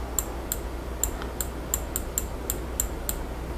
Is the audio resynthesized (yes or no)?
no